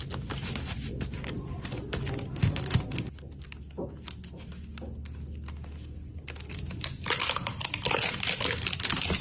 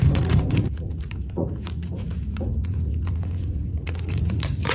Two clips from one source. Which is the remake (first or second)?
second